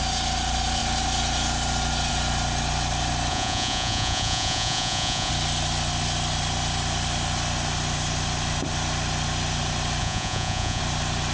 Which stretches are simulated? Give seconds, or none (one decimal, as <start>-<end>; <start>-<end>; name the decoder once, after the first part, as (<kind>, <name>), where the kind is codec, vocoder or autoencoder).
3.3-5.3 (vocoder, Vocos); 10.0-10.8

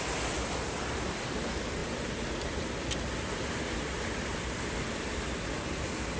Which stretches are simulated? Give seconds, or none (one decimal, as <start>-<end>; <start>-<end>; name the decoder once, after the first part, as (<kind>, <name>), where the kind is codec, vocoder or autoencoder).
none

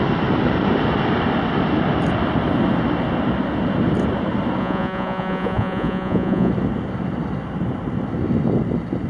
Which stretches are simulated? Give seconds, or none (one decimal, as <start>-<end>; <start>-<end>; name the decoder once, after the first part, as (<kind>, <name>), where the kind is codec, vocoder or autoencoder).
4.6-6.5 (vocoder, Vocos)

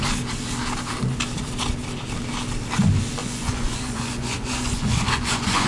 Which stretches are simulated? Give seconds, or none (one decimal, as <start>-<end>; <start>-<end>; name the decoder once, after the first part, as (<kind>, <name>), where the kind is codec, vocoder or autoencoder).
3.2-5.7 (vocoder, Vocos)